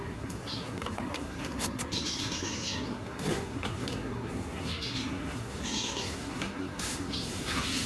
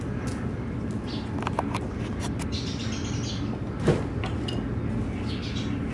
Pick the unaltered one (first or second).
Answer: second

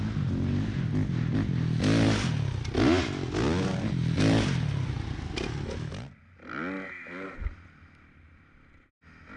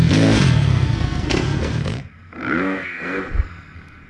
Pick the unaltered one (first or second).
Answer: first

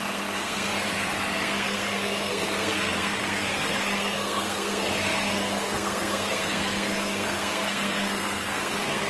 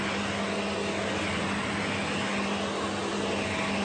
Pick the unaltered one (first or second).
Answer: second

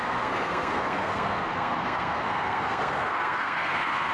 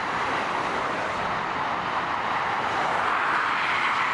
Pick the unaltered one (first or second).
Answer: second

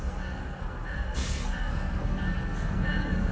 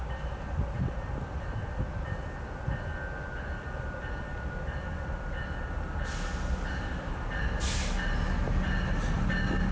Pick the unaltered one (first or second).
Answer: second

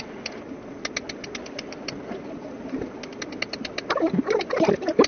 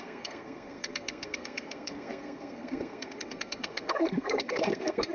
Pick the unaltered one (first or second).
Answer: first